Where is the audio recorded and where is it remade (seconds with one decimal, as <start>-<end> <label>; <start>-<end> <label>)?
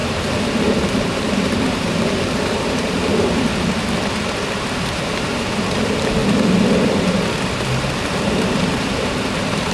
0.0-3.5 remade; 3.5-4.8 recorded; 4.8-6.2 remade; 6.2-8.0 recorded; 8.0-9.7 remade